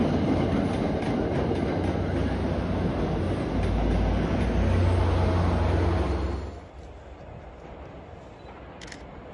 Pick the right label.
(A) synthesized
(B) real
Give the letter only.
B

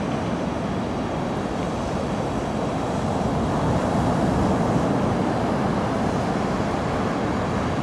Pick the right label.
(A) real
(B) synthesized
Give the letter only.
A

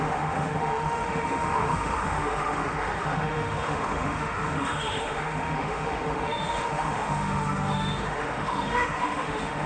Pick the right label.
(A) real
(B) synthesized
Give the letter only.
B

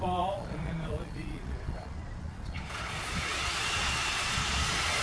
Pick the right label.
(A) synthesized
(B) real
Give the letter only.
A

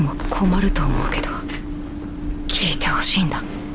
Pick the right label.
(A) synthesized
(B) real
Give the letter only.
B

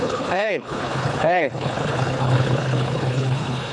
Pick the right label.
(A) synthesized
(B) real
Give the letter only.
A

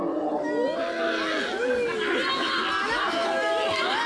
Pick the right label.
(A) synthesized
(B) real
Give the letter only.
B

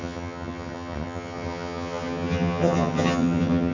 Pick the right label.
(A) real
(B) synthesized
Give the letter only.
B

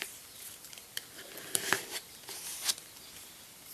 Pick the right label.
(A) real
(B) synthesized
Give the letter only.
B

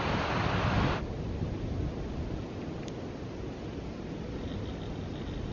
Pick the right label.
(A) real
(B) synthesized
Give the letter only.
A